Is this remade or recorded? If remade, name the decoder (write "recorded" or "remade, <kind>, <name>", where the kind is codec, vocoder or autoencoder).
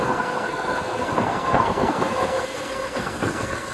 remade, codec, SNAC